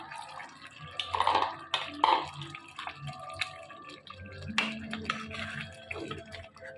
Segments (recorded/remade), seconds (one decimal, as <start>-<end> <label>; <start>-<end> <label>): 0.0-6.8 recorded